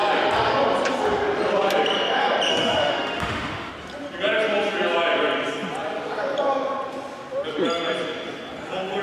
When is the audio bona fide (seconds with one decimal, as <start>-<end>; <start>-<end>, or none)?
0.0-2.5; 3.7-9.0